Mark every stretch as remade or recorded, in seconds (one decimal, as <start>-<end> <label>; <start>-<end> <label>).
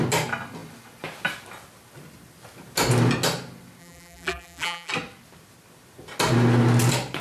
0.0-3.8 recorded; 3.8-4.9 remade; 4.9-7.2 recorded